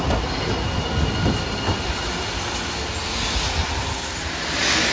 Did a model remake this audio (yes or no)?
no